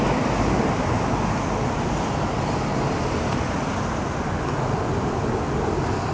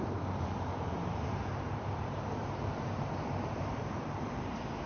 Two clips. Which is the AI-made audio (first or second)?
second